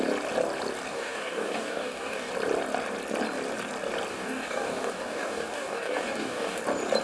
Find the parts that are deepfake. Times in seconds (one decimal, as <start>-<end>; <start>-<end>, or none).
0.9-2.3; 4.1-6.6